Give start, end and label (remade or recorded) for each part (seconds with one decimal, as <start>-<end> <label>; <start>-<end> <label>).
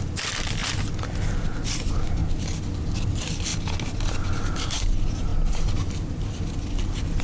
0.0-0.6 remade; 0.6-1.7 recorded; 1.7-2.2 remade; 2.2-3.0 recorded; 3.0-3.5 remade; 3.5-4.6 recorded; 4.6-7.2 remade